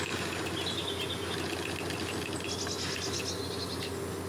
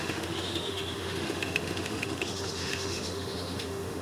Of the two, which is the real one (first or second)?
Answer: first